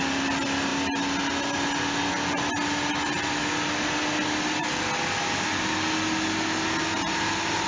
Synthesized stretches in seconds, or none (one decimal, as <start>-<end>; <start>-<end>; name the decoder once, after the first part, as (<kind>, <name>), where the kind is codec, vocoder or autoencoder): none